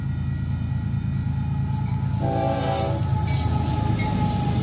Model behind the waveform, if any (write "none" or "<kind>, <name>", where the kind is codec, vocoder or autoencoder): none